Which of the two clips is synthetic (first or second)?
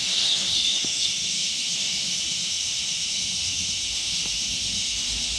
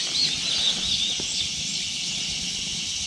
first